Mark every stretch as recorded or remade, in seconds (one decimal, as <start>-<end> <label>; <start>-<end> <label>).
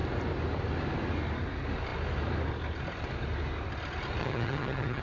0.0-4.2 recorded; 4.2-5.0 remade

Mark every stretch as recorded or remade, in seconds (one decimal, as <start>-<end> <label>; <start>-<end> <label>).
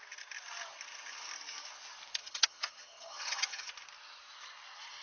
0.0-2.2 recorded; 2.2-3.7 remade; 3.7-5.0 recorded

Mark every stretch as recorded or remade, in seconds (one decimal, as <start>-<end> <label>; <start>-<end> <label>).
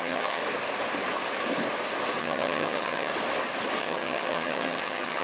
0.0-0.4 remade; 0.4-2.2 recorded; 2.2-3.1 remade; 3.1-3.8 recorded; 3.8-5.2 remade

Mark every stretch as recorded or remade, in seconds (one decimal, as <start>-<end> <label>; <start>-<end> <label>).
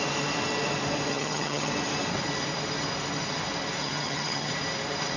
0.0-1.1 recorded; 1.1-1.7 remade; 1.7-3.8 recorded; 3.8-4.5 remade; 4.5-5.2 recorded